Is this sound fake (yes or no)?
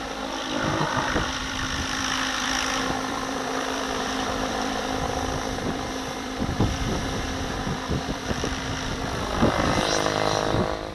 yes